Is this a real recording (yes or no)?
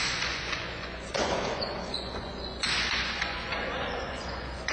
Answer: no